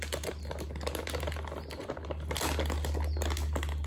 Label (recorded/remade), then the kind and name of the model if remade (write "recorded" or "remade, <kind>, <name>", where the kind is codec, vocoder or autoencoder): recorded